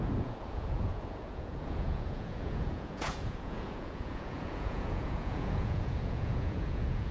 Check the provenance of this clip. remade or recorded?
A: remade